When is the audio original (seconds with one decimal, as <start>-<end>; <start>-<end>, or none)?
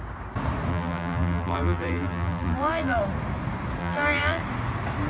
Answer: 0.0-0.7; 3.0-3.8; 4.4-5.1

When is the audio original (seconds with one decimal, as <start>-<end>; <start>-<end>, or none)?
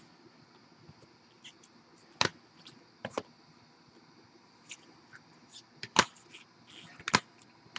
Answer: 0.0-7.8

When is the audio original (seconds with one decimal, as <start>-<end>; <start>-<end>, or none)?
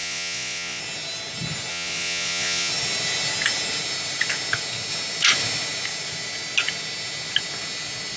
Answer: 0.8-1.7; 2.7-8.2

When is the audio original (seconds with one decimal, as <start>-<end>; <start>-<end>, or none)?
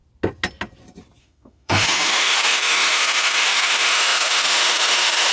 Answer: 0.0-1.2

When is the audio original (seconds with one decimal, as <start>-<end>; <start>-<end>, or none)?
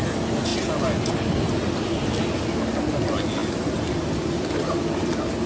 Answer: 0.0-5.5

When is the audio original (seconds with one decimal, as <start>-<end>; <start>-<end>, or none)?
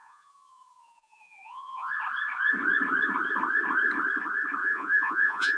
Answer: 1.9-4.6